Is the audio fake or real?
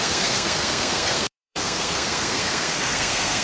fake